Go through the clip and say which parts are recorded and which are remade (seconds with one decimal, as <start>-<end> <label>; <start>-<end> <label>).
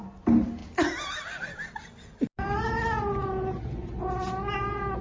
0.0-5.0 recorded